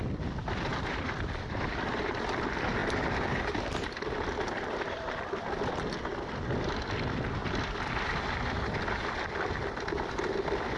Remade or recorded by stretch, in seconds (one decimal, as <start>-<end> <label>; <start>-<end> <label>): 0.0-0.7 recorded; 0.7-2.2 remade; 2.2-10.8 recorded